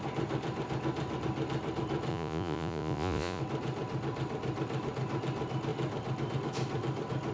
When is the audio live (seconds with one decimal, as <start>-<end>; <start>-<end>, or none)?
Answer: 0.0-2.1; 3.4-7.3